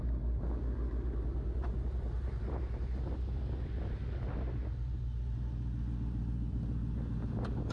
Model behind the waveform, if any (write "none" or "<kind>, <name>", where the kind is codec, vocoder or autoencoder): none